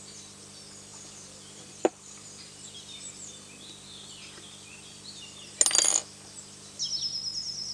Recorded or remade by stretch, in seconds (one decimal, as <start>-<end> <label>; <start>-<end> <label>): 0.0-0.9 recorded; 0.9-5.1 remade; 5.1-7.7 recorded